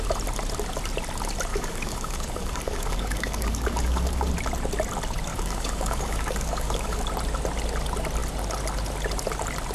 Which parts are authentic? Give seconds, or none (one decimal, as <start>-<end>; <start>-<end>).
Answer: 0.0-1.5; 4.3-5.3; 7.0-9.7